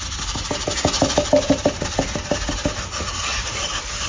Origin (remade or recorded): recorded